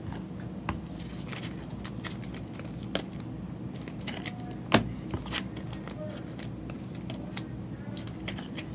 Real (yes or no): yes